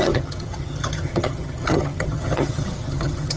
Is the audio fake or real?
fake